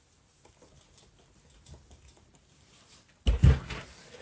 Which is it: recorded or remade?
recorded